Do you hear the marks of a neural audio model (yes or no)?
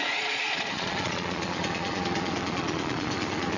yes